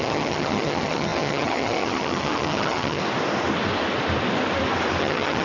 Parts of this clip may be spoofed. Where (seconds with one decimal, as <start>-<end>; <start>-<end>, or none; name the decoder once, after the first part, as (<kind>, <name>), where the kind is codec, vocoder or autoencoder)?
0.0-3.0 (vocoder, HiFi-GAN); 5.0-5.4